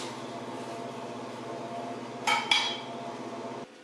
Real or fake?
real